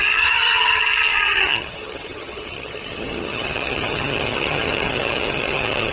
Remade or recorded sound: remade